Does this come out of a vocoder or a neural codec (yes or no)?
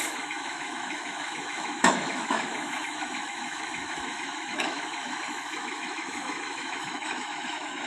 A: yes